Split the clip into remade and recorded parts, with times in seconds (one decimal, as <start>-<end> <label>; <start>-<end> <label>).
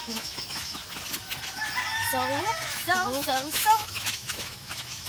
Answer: 0.0-0.8 remade; 0.8-2.4 recorded; 2.4-5.1 remade